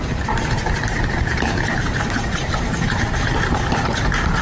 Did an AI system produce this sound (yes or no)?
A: yes